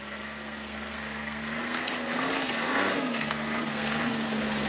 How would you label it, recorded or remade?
remade